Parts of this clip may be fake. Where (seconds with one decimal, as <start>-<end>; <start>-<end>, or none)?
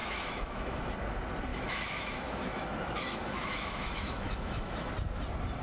0.0-0.9; 1.5-4.9